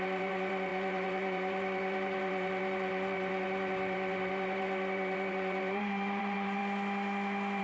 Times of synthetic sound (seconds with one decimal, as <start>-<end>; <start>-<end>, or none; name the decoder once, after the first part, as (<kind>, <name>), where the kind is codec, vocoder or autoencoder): 0.0-6.6 (vocoder, BigVGAN v2)